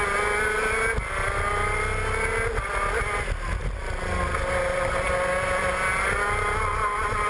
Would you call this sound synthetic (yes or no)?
no